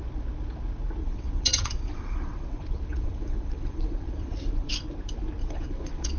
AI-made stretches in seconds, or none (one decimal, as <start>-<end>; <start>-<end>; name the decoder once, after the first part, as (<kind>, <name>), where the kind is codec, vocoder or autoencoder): 1.0-4.7 (vocoder, WaveNeXt); 5.4-6.2